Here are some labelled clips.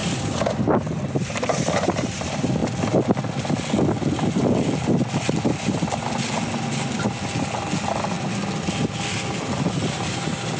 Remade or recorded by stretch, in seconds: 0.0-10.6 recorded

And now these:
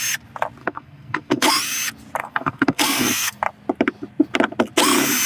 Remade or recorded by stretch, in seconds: 0.0-0.6 recorded; 0.6-1.5 remade; 1.5-2.2 recorded; 2.2-3.4 remade; 3.4-5.3 recorded